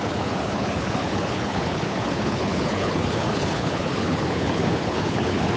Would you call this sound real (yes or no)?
no